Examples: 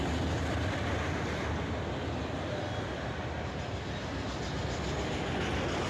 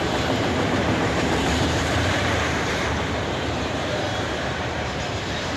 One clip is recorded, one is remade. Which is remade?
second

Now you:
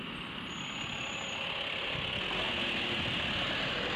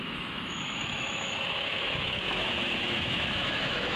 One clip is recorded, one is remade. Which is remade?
second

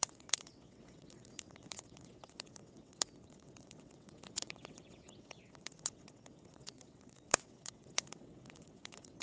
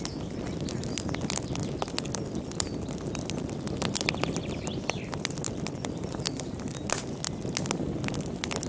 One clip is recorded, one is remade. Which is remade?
first